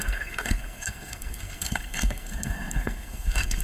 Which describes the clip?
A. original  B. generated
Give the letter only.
B